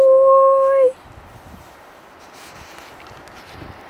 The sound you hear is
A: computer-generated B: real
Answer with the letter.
B